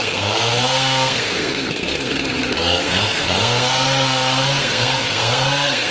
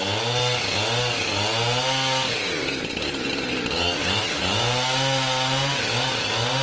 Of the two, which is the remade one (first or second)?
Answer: first